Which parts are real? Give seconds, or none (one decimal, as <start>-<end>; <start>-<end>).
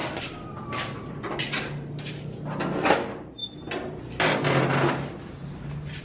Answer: 0.0-6.0